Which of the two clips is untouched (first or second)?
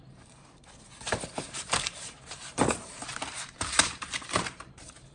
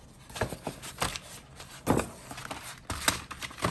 second